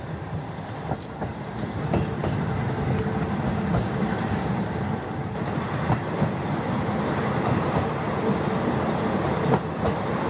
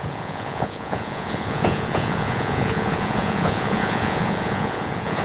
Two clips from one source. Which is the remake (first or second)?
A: second